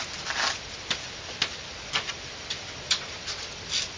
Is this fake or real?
real